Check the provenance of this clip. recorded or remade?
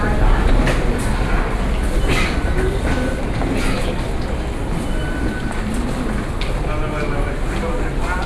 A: recorded